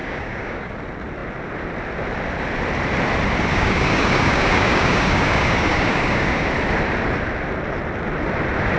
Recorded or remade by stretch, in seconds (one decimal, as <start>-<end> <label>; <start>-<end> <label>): 0.0-0.7 remade; 0.7-3.5 recorded; 3.5-6.5 remade; 6.5-8.8 recorded